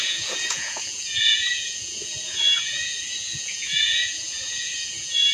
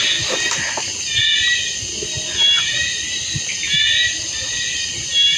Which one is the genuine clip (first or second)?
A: second